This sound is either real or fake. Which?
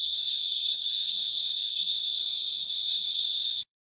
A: fake